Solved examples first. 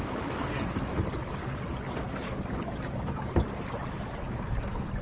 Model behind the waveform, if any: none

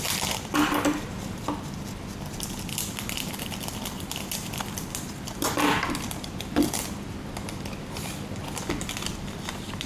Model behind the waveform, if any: vocoder, BigVGAN v2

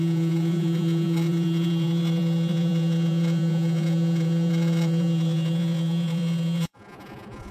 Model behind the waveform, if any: vocoder, Vocos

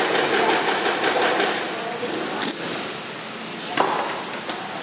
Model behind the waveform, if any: none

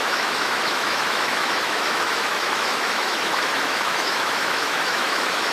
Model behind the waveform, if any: autoencoder, DAC-VAE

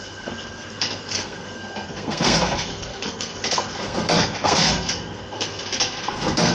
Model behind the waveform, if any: codec, SNAC